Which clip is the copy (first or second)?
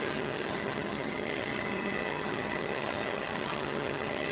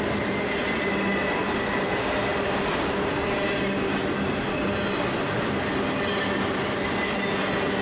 first